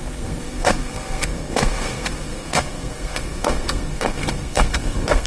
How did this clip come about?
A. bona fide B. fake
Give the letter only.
B